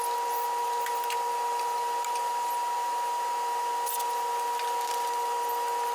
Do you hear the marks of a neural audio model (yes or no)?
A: no